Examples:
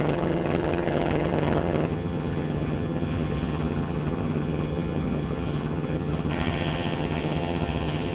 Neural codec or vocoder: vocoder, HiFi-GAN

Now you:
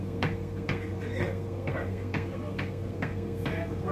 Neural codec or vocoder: codec, SNAC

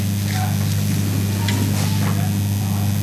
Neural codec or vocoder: none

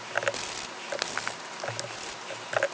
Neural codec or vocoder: none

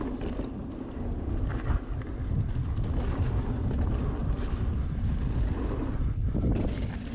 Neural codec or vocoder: none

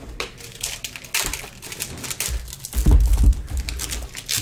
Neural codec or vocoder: none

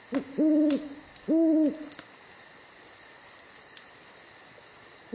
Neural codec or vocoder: none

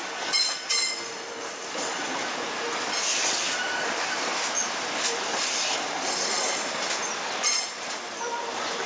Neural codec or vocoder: none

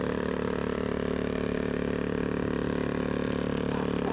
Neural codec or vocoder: none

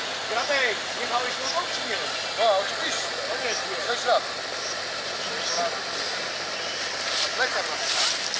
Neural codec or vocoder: none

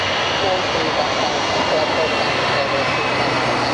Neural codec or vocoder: none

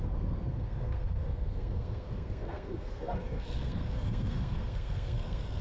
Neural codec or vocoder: codec, SNAC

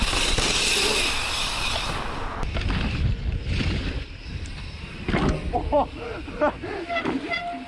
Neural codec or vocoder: none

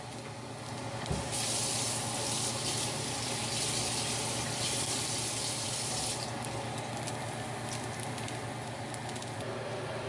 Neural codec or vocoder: none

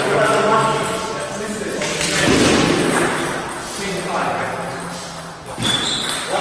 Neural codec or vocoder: none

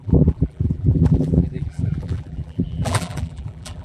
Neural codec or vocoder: vocoder, BigVGAN v2